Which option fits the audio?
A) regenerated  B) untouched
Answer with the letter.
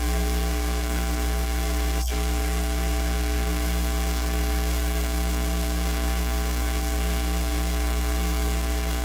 A